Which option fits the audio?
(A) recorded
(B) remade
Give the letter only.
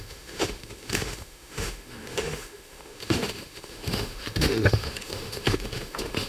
B